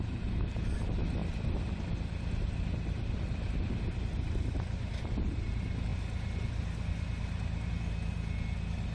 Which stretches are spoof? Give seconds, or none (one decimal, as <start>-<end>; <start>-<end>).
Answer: none